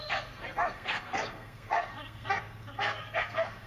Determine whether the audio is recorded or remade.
remade